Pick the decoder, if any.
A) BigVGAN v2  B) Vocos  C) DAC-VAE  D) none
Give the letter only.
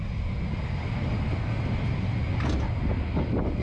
D